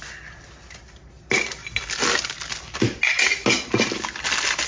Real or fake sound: real